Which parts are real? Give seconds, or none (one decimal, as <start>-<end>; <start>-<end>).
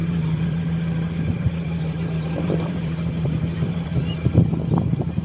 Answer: 3.9-4.7